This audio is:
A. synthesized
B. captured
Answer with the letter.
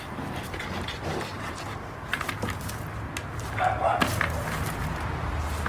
B